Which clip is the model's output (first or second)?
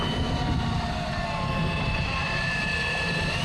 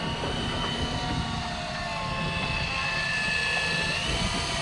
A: first